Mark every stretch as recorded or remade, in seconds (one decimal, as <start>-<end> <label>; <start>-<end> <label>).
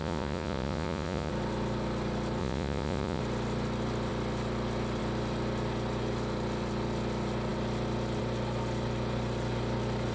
0.0-1.3 remade; 1.3-2.4 recorded; 2.4-3.2 remade; 3.2-10.1 recorded